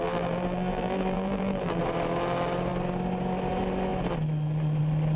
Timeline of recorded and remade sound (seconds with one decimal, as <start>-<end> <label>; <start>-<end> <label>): 0.0-1.8 remade; 1.8-5.2 recorded